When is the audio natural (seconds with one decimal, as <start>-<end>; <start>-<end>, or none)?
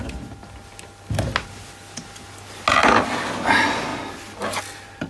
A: 0.0-5.1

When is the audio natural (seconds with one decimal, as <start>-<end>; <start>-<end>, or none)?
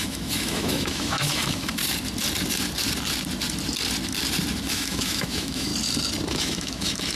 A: 1.8-4.7; 5.7-6.3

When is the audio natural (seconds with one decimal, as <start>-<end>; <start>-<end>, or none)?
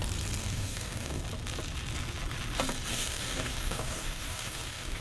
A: 0.0-0.4; 1.2-2.9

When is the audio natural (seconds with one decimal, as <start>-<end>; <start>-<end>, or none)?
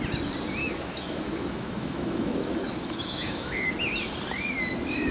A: 0.0-0.6; 3.7-5.1